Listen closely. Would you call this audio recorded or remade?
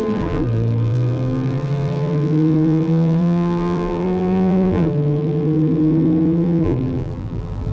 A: remade